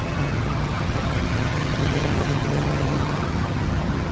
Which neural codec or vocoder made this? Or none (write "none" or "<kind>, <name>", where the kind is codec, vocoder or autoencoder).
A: vocoder, HiFi-GAN